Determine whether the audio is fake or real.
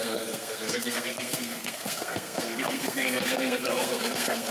fake